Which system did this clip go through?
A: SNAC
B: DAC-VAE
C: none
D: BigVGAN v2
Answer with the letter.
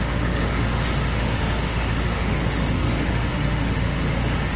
B